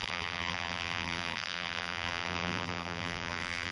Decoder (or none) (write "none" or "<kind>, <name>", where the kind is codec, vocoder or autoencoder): vocoder, BigVGAN v2